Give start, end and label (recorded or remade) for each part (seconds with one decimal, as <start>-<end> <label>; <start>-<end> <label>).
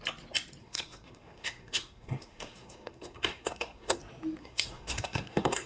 0.0-0.6 recorded; 0.6-4.0 remade; 4.0-4.4 recorded; 4.4-5.7 remade